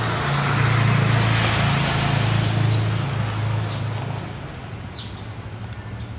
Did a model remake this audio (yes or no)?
no